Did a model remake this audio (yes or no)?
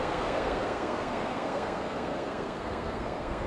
yes